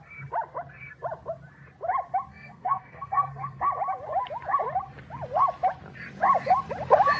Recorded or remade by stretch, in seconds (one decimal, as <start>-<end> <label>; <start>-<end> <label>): 0.0-2.3 recorded; 2.3-3.6 remade; 3.6-7.2 recorded

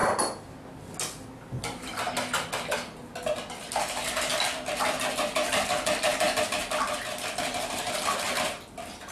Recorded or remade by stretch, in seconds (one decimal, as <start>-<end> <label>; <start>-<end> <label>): 0.0-9.1 recorded